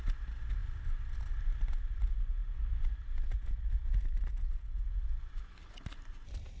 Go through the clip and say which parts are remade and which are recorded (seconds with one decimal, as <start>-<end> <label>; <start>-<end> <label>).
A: 0.0-6.6 recorded